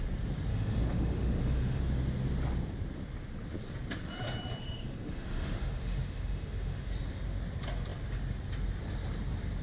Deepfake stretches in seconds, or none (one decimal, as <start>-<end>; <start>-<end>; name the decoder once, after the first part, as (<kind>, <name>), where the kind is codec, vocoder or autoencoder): 0.5-1.8 (autoencoder, DAC-VAE); 4.6-6.9